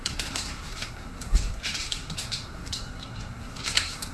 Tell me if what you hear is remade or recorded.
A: remade